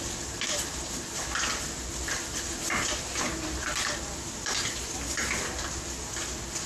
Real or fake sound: real